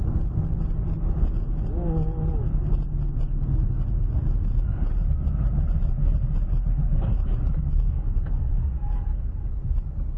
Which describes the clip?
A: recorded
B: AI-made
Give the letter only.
A